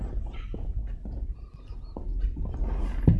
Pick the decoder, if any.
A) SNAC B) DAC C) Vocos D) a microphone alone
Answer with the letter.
D